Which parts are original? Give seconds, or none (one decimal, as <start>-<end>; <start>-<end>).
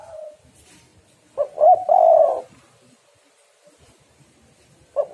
0.0-5.1